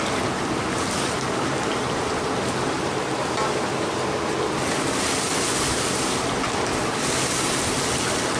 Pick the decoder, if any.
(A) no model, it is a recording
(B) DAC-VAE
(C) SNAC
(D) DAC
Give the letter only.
A